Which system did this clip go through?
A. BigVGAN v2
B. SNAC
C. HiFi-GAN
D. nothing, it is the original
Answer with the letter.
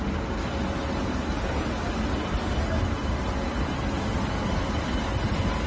D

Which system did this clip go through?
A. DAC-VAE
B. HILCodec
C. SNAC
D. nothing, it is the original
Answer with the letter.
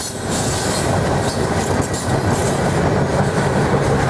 D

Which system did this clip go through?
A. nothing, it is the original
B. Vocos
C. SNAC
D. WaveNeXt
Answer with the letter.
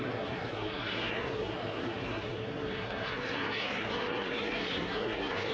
C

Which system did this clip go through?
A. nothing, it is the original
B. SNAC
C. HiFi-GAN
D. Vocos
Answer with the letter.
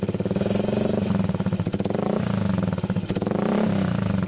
A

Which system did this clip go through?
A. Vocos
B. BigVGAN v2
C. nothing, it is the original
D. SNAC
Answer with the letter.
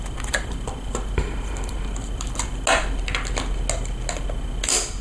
C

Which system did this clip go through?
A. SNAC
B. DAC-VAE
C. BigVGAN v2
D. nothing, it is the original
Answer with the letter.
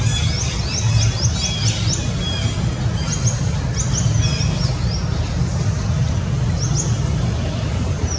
D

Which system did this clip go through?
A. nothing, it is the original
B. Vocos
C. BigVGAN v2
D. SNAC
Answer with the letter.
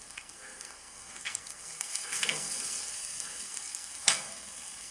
D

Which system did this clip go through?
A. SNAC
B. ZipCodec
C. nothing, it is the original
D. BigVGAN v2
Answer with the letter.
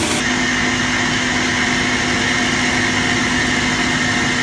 C